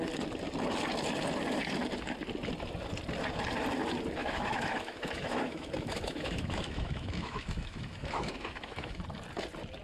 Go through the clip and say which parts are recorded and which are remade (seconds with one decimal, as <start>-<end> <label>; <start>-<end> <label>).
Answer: 0.0-4.2 recorded; 4.2-9.0 remade; 9.0-9.8 recorded